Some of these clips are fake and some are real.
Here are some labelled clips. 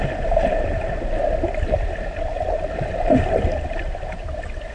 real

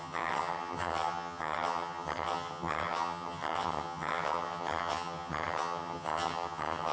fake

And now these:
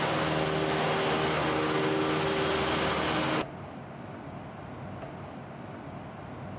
real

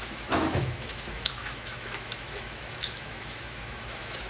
fake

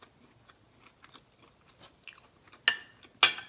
real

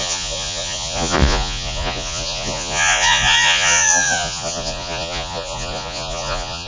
fake